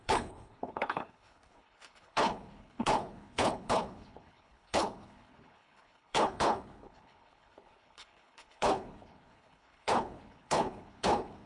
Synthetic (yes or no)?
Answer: yes